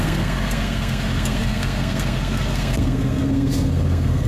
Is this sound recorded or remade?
remade